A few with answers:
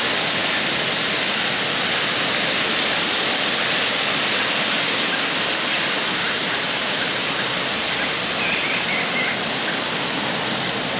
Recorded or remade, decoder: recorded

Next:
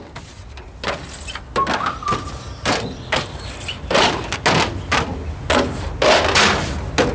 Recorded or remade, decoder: recorded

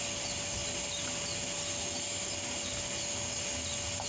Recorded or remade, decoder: recorded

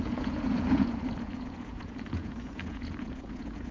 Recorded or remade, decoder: remade, vocoder, Vocos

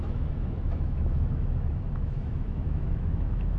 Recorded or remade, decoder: remade, autoencoder, DAC-VAE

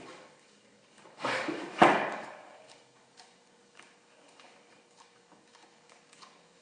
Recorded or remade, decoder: remade, codec, DAC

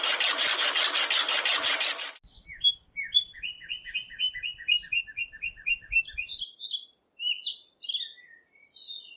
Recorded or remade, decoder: recorded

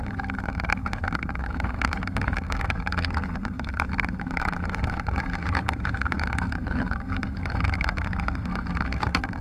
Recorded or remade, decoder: remade, codec, SNAC